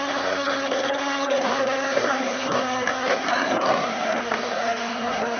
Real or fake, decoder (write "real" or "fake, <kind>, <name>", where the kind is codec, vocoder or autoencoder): fake, codec, SNAC